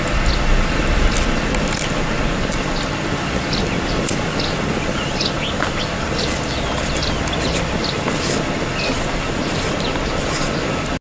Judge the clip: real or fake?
real